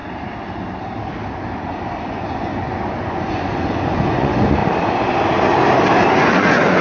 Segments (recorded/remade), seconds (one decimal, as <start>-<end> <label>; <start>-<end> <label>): 0.0-2.0 recorded; 2.0-4.6 remade; 4.6-6.2 recorded; 6.2-6.8 remade